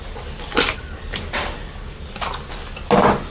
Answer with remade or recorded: recorded